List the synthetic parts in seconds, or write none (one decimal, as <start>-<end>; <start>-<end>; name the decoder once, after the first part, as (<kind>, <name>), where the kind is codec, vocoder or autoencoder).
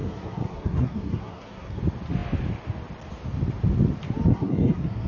0.0-1.8 (codec, SNAC); 4.3-5.1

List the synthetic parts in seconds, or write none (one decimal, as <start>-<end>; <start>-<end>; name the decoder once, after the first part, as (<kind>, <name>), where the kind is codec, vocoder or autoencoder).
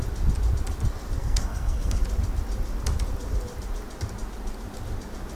1.2-2.0 (codec, SNAC)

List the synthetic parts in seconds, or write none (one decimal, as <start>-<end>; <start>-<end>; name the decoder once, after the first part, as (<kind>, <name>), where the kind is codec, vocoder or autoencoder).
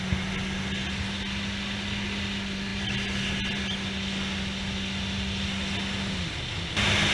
none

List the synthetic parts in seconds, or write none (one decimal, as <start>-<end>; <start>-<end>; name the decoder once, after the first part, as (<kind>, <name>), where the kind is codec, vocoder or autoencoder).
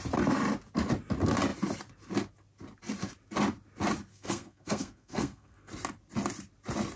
4.1-5.7 (codec, SNAC)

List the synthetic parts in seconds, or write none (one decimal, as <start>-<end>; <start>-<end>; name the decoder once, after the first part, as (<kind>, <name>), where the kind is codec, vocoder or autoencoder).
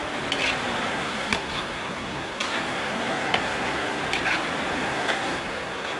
0.9-4.0 (codec, SNAC); 4.7-6.0